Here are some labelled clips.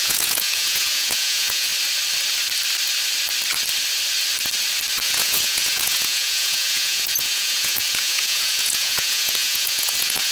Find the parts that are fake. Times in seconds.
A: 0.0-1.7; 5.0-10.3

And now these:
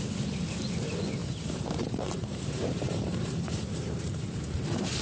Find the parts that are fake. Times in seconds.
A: 1.2-4.2

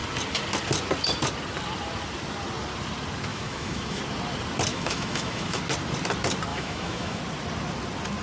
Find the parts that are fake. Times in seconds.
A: 3.3-4.0; 4.7-5.6; 6.5-7.2

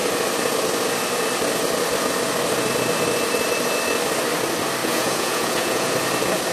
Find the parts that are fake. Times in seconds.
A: 4.8-5.9

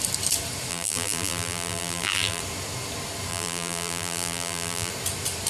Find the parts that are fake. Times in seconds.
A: 0.7-2.4; 3.3-4.9

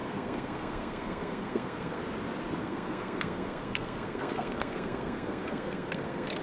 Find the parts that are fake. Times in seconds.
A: 0.0-2.0; 2.6-6.4